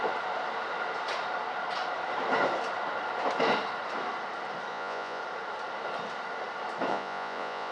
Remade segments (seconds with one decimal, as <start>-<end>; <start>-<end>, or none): 4.7-5.2; 6.9-7.7